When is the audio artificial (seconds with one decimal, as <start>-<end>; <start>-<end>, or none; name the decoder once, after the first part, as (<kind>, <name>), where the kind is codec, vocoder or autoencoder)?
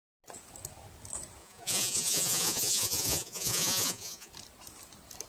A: 1.4-4.3 (vocoder, Vocos)